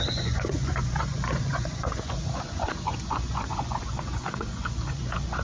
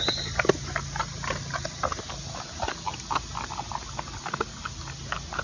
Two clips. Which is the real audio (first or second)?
second